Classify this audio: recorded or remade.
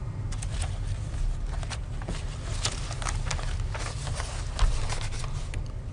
recorded